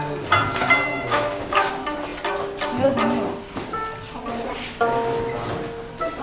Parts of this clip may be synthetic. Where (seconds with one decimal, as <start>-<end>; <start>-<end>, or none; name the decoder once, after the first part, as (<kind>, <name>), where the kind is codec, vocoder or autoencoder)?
0.9-1.7 (codec, DAC)